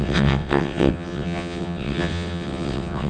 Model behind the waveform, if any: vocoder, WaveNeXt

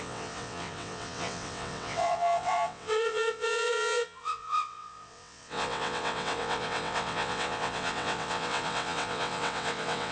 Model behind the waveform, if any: vocoder, WaveNeXt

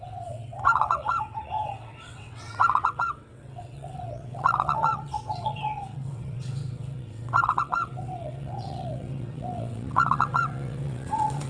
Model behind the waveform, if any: vocoder, WaveNeXt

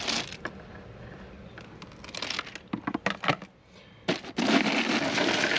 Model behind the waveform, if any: none